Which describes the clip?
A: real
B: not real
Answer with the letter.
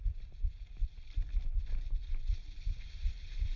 A